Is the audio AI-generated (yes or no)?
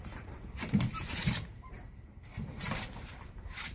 yes